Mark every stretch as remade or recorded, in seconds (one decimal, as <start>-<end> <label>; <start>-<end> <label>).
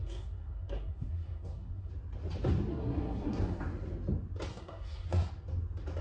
0.0-1.9 remade; 1.9-2.7 recorded; 2.7-3.6 remade; 3.6-4.5 recorded; 4.5-5.3 remade; 5.3-6.0 recorded